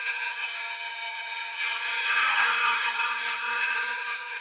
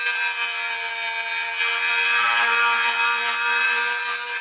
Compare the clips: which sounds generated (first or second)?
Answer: first